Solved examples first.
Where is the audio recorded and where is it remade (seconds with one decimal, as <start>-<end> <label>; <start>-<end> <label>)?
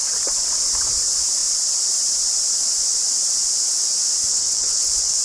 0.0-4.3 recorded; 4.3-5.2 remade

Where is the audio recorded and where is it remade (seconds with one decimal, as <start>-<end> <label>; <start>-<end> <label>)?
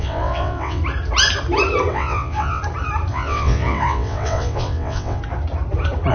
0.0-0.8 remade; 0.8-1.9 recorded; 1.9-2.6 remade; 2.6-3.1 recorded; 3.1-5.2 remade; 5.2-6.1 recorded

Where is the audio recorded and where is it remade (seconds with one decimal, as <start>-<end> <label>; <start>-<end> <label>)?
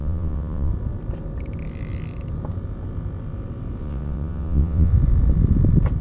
0.0-0.7 remade; 0.7-3.8 recorded; 3.8-4.9 remade; 4.9-6.0 recorded